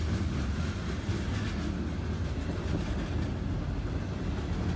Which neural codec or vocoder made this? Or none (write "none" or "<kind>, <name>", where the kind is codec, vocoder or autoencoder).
none